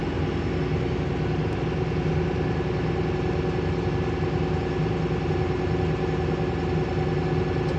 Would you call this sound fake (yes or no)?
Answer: no